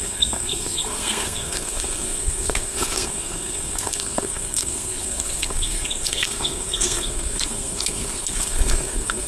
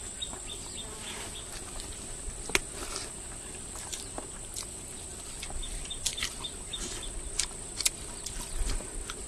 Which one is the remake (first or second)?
first